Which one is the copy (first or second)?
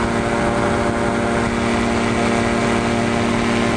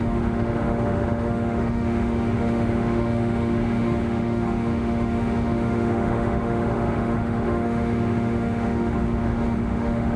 second